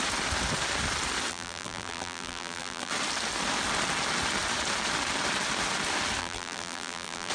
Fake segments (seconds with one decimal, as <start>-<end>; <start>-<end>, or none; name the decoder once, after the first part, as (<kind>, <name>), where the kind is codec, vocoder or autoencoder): 1.3-2.9 (vocoder, BigVGAN v2); 6.2-7.3